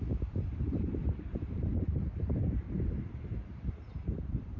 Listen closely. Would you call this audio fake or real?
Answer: fake